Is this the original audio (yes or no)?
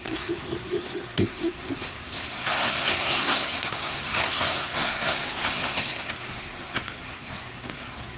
no